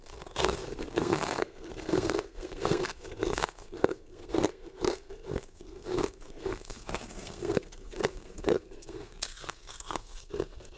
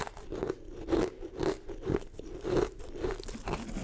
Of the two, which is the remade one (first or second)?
first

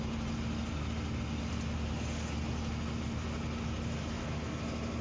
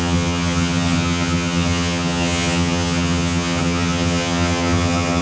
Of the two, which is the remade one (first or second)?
second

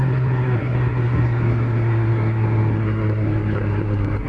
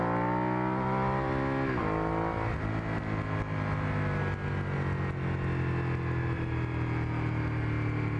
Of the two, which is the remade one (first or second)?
first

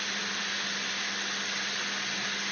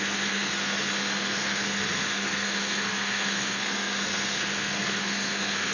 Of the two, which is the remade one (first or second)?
second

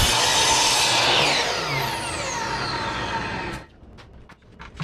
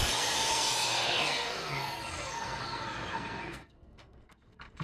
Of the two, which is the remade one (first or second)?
second